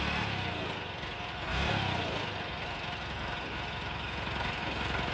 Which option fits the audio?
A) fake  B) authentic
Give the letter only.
B